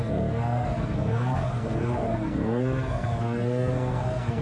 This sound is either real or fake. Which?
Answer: fake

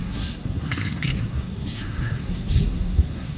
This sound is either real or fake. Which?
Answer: fake